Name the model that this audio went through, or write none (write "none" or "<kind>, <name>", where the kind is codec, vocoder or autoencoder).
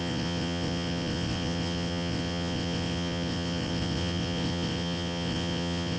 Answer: vocoder, WaveNeXt